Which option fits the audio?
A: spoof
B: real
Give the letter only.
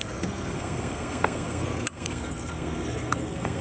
A